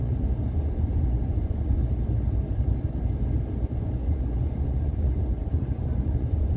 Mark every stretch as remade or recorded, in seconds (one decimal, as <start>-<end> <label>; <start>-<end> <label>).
0.0-1.8 remade; 1.8-3.7 recorded; 3.7-6.6 remade